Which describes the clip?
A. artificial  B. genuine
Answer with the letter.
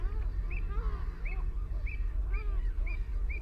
B